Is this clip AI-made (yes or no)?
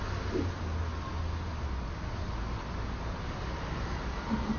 no